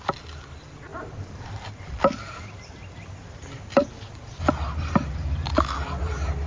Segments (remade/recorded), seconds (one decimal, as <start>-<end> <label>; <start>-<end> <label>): 0.0-0.9 recorded; 0.9-2.0 remade; 2.0-6.5 recorded